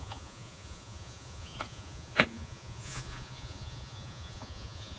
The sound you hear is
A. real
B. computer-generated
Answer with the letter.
B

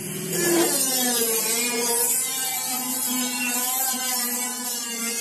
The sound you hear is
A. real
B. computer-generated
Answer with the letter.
B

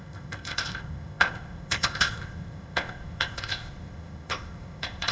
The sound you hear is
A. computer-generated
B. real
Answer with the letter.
A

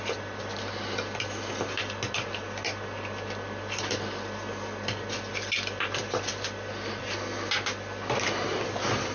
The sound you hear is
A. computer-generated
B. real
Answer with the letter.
B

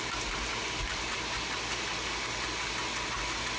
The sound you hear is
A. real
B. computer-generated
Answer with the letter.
A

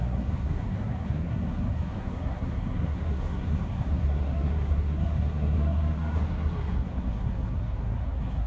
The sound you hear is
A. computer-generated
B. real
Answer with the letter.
A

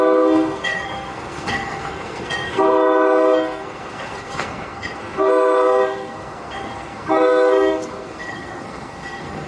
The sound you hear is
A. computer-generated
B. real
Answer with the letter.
A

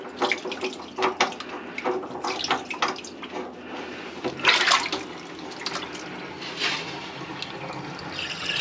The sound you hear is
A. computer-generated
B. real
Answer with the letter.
B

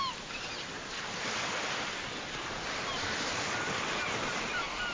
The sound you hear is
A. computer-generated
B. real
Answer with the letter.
B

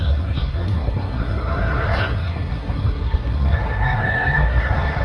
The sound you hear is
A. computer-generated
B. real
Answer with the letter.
A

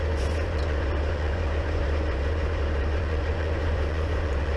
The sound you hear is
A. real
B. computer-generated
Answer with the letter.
B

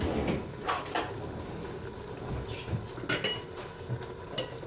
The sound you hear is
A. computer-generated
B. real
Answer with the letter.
B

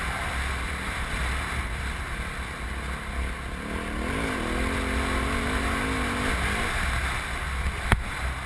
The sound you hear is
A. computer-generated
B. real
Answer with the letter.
B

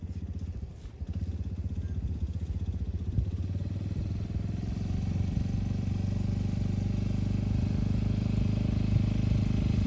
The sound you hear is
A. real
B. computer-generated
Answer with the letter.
A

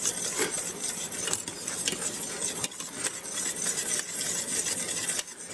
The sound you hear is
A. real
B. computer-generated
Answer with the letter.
A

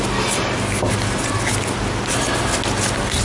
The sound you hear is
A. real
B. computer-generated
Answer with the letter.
A